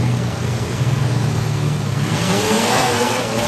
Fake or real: fake